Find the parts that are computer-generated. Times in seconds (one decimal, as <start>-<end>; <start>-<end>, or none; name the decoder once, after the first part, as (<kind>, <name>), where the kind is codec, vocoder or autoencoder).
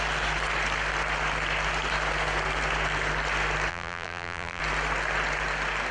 3.7-4.6 (vocoder, BigVGAN v2)